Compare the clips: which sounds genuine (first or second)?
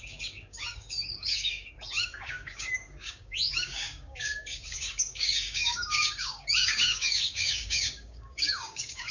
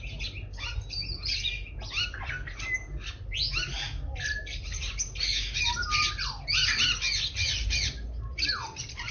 second